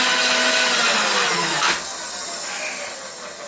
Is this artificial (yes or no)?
no